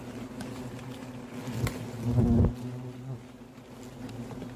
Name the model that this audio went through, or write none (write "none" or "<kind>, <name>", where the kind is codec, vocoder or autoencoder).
none